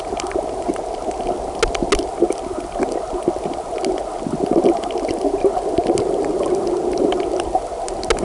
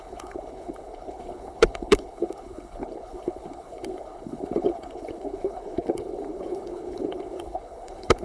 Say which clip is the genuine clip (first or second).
first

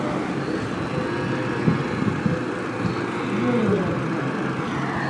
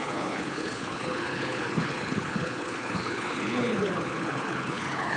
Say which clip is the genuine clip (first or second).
first